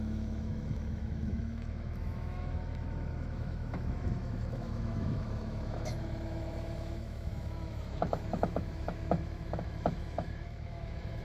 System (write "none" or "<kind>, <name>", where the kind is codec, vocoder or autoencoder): autoencoder, DAC-VAE